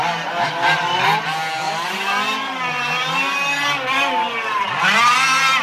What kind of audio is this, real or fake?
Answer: real